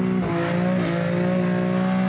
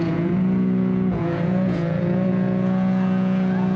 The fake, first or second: second